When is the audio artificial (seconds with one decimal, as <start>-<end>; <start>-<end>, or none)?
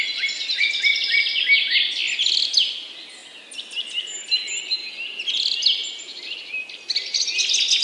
5.8-6.6